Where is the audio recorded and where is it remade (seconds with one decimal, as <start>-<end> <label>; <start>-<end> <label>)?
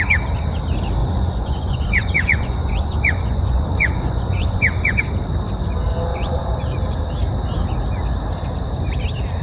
0.0-1.0 recorded; 1.0-5.0 remade; 5.0-6.1 recorded; 6.1-6.6 remade; 6.6-9.4 recorded